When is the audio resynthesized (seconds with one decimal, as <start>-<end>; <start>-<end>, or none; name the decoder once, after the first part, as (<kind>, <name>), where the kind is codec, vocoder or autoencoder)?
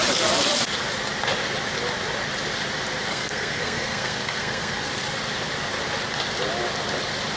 3.1-4.9 (codec, SNAC)